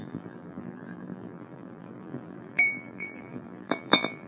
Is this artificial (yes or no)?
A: yes